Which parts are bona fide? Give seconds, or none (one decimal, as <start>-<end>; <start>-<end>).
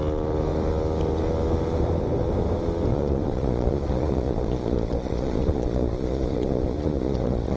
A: 0.0-2.9